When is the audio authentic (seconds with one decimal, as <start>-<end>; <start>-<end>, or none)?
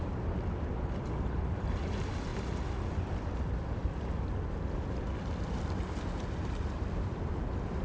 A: 0.0-7.8